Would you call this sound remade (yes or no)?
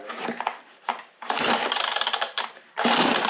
yes